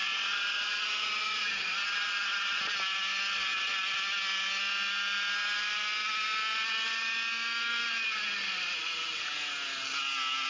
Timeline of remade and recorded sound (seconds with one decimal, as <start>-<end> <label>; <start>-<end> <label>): 0.0-2.6 remade; 2.6-10.5 recorded